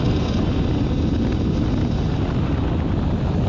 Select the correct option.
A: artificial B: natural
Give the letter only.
B